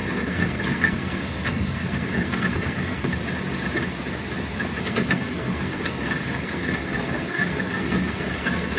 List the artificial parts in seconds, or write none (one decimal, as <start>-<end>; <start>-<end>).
0.0-3.2; 4.8-8.8